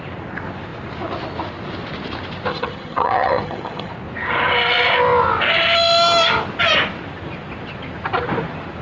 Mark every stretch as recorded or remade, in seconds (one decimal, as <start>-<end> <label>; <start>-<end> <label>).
0.0-2.5 recorded; 2.5-3.9 remade; 3.9-8.8 recorded